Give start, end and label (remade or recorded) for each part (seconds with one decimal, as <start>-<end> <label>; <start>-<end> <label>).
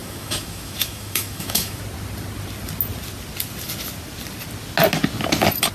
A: 0.0-1.8 remade; 1.8-5.7 recorded